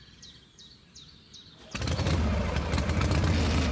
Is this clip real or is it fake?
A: real